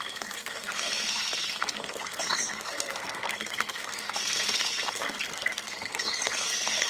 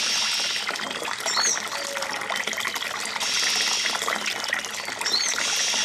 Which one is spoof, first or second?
first